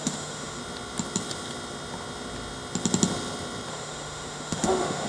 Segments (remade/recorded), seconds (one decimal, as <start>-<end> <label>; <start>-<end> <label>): 0.0-0.6 remade; 0.6-3.7 recorded; 3.7-5.1 remade